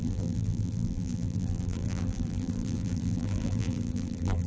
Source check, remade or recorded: remade